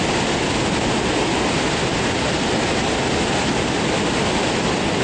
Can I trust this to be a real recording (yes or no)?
yes